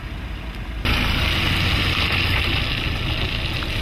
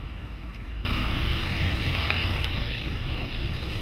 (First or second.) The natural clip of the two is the first